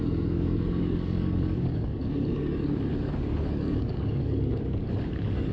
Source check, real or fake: fake